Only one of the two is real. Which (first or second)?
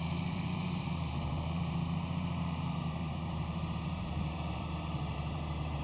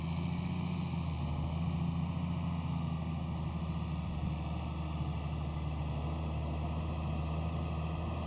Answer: second